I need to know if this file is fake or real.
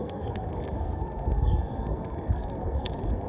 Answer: fake